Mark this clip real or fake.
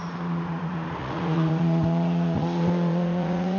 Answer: fake